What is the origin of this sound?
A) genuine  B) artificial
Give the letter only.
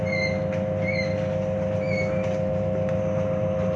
A